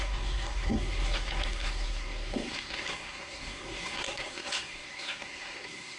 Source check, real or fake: fake